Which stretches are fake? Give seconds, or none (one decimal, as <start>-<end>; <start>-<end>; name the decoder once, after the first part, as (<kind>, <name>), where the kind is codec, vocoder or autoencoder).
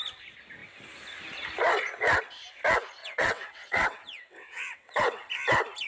3.0-5.3 (vocoder, WaveNeXt)